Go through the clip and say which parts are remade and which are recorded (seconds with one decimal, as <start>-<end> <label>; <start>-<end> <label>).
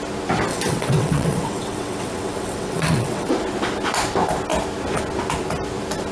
0.0-0.5 recorded; 0.5-3.3 remade; 3.3-6.1 recorded